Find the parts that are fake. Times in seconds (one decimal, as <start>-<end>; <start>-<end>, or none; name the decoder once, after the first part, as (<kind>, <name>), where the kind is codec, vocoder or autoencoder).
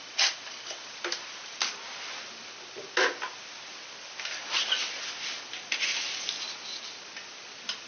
none